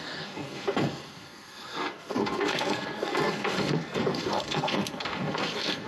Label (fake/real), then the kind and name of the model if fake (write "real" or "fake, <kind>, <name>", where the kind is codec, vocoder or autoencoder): fake, codec, SNAC